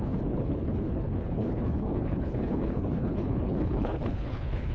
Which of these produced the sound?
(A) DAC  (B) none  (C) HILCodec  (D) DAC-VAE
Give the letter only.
C